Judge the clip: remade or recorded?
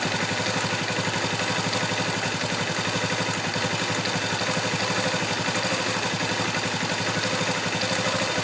recorded